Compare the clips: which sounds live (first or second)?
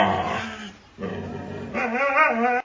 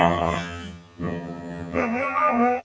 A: first